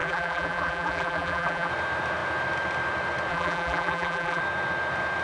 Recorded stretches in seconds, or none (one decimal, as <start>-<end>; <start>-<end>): 1.7-3.3; 4.4-5.2